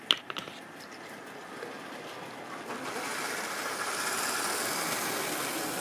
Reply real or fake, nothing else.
real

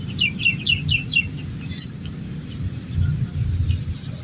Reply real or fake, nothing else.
real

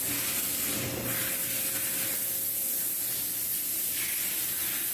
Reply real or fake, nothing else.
real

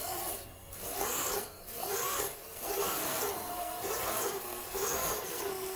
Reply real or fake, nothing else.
fake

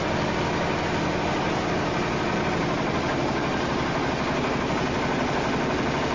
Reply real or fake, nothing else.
real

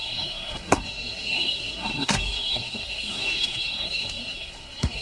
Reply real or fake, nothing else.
fake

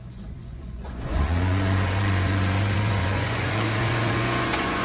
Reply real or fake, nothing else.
fake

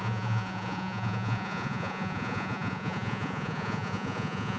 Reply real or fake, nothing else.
fake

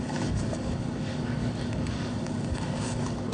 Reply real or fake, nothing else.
fake